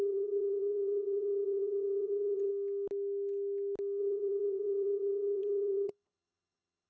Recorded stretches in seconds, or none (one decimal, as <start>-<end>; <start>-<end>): 2.5-4.0